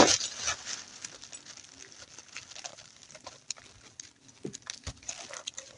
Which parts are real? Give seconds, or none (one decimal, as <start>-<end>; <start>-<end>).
0.0-2.7; 3.3-5.8